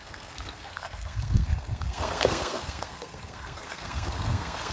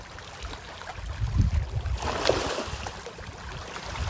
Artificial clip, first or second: first